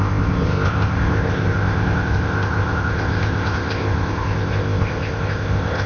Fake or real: fake